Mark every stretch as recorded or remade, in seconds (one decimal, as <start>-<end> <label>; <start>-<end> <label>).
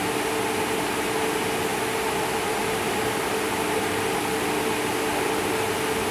0.0-6.1 recorded